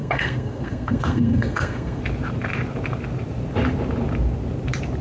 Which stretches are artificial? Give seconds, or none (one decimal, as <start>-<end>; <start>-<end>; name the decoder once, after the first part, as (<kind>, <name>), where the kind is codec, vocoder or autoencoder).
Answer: 0.0-2.0 (codec, SNAC)